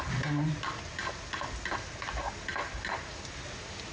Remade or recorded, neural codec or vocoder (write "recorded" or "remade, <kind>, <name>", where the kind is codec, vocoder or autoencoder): recorded